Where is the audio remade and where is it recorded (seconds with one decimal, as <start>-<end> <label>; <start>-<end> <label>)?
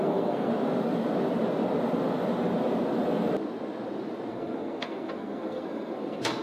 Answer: 0.0-0.5 remade; 0.5-4.3 recorded; 4.3-6.4 remade